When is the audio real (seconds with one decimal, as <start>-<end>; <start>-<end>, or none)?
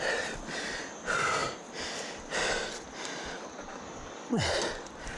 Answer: 0.0-3.7; 4.3-5.2